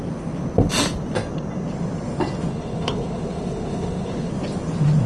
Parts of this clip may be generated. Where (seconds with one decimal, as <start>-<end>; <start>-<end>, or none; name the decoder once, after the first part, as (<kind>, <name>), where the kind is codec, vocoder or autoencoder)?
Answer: 2.5-4.3 (codec, HILCodec)